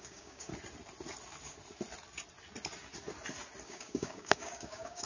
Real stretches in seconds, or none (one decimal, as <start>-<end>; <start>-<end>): 0.5-3.6